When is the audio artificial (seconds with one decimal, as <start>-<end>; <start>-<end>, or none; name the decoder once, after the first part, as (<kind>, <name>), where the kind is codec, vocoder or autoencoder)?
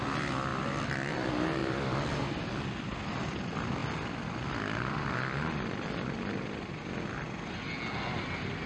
0.5-1.1 (vocoder, BigVGAN v2); 1.6-2.4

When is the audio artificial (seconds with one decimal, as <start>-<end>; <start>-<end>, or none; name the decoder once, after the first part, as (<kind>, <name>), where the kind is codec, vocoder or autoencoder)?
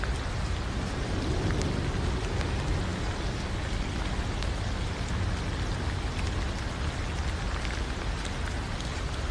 none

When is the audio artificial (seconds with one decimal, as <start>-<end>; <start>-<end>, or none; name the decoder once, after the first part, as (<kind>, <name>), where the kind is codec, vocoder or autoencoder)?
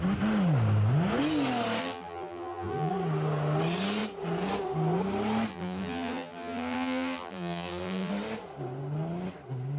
1.8-2.9 (vocoder, BigVGAN v2); 5.5-8.1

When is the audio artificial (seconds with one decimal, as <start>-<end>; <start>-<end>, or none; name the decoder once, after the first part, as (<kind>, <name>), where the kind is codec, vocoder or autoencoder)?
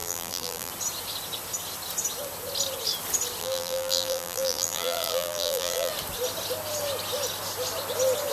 0.0-0.7 (vocoder, BigVGAN v2); 3.4-5.9